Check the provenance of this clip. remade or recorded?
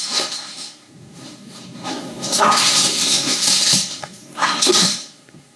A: remade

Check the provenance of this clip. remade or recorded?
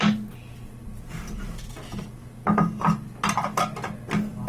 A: recorded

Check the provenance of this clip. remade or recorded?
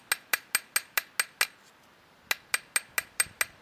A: recorded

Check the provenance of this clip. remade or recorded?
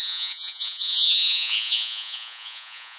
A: remade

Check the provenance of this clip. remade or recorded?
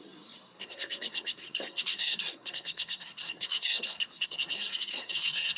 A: remade